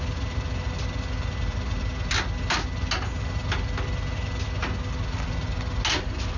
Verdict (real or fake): real